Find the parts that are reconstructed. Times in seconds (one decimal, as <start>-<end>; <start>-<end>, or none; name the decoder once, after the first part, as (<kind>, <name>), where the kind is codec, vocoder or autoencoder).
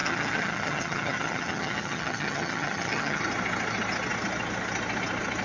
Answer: 0.0-3.2 (vocoder, HiFi-GAN)